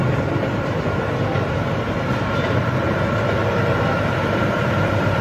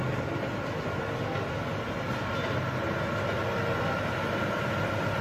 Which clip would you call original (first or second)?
second